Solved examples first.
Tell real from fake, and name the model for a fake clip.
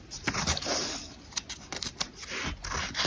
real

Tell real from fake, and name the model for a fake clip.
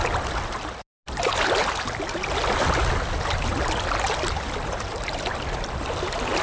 real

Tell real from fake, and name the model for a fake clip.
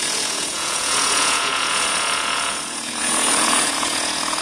fake, vocoder, Vocos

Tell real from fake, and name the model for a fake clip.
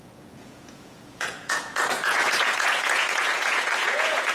fake, vocoder, Vocos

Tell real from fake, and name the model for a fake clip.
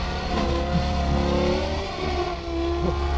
real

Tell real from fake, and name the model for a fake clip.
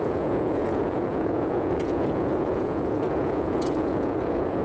fake, vocoder, Vocos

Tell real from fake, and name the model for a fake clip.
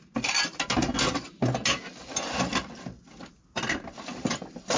real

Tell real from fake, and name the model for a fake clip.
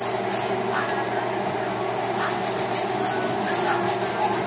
real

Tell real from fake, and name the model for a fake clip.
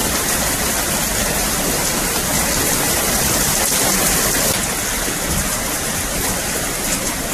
real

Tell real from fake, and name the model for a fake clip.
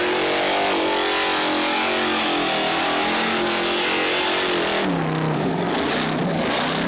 real